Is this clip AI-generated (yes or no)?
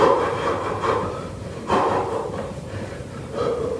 yes